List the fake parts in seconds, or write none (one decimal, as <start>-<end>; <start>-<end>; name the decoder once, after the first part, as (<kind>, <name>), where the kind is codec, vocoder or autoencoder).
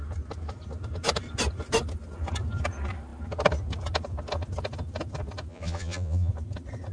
5.5-6.3 (vocoder, Vocos)